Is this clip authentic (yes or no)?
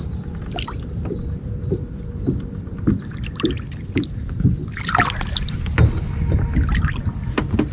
yes